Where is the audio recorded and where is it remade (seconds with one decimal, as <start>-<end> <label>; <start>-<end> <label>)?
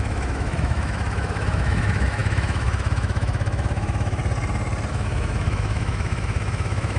0.0-4.2 remade; 4.2-4.9 recorded; 4.9-7.0 remade